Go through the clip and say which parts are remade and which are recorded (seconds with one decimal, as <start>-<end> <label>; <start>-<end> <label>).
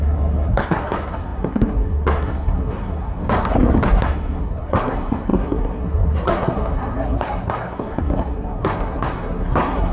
0.0-9.9 remade